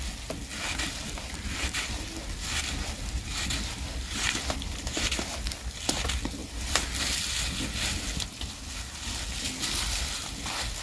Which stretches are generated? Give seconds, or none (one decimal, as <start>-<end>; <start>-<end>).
0.5-5.0; 6.4-8.0